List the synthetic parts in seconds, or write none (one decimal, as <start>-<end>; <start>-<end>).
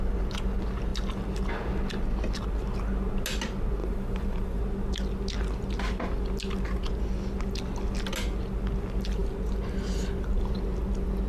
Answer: 3.8-4.6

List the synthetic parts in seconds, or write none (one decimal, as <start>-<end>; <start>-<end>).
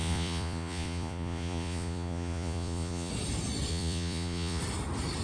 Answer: 0.0-3.1; 3.7-4.6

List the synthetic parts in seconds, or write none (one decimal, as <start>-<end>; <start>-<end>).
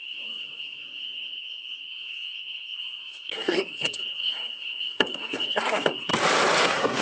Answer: 0.0-6.1; 6.6-7.0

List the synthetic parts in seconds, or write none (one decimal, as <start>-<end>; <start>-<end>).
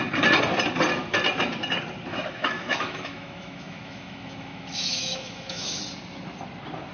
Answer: 2.1-5.8